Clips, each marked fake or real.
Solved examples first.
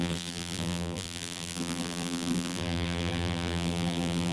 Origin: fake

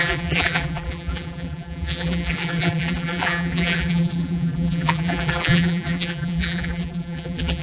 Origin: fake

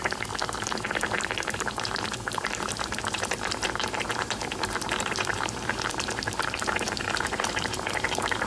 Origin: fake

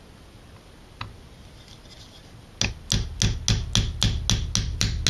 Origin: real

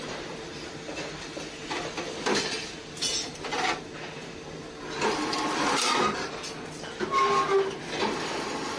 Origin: real